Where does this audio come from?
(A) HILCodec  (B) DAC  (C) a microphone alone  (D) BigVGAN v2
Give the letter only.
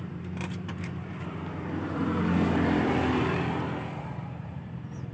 D